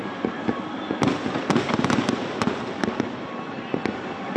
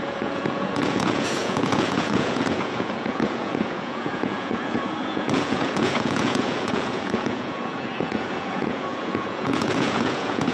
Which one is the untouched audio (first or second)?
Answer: first